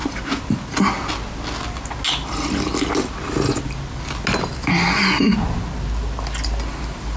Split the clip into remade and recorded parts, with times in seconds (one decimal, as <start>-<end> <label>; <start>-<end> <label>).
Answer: 0.0-7.2 recorded